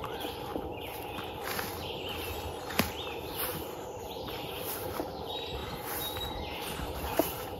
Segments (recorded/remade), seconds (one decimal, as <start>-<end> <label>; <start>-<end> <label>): 0.0-0.5 remade; 0.5-2.9 recorded; 2.9-7.6 remade